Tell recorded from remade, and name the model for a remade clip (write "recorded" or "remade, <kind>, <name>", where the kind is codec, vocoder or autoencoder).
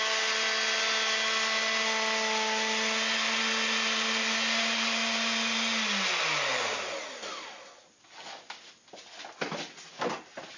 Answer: recorded